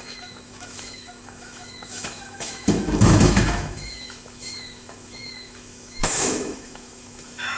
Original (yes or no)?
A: no